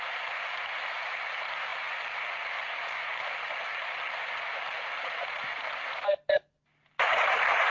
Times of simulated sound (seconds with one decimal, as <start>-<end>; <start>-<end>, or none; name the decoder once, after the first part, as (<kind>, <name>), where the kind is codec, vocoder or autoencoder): none